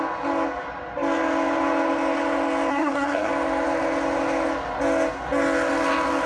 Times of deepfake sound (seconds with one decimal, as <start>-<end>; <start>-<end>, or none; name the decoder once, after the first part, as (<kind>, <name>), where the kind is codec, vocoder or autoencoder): 2.7-3.3 (codec, SNAC)